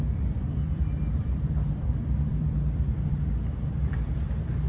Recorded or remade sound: remade